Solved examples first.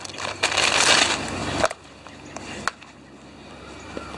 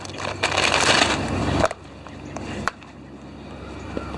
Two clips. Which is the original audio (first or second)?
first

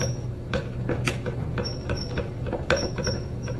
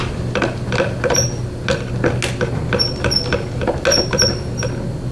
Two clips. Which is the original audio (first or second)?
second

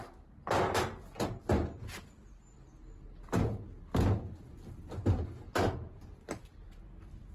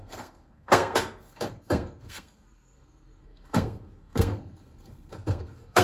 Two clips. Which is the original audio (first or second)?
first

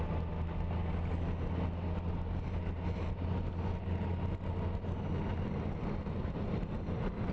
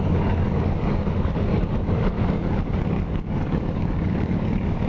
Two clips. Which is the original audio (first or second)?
first